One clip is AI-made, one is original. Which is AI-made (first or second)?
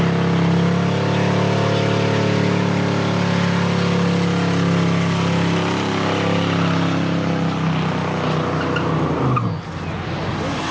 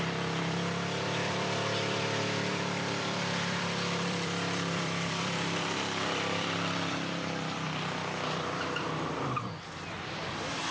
second